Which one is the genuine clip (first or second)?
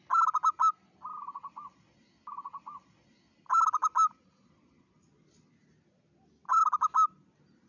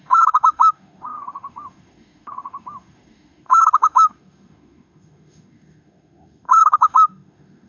first